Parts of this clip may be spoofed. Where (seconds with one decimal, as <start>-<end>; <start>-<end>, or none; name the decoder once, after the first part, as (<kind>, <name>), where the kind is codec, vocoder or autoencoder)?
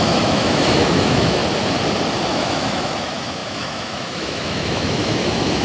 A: 0.0-1.4 (autoencoder, DAC-VAE); 2.3-5.6